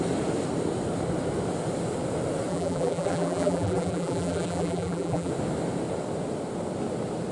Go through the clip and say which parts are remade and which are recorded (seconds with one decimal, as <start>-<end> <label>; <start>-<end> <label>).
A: 0.0-2.5 recorded; 2.5-5.3 remade; 5.3-7.3 recorded